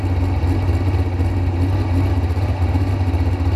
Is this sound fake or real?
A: real